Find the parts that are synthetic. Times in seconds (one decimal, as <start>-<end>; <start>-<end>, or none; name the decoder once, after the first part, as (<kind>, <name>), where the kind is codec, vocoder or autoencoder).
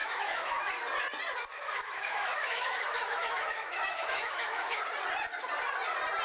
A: 0.0-0.7 (autoencoder, DAC-VAE); 1.5-4.8